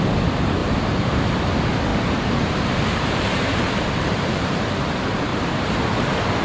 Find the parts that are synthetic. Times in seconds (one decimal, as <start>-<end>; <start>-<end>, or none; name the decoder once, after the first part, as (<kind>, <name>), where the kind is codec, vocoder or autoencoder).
0.6-1.2 (vocoder, BigVGAN v2); 1.9-4.7; 5.3-6.4